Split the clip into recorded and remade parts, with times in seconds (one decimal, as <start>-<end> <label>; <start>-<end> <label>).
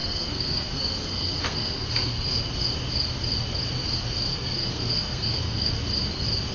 0.0-2.5 remade; 2.5-4.3 recorded; 4.3-5.7 remade; 5.7-6.5 recorded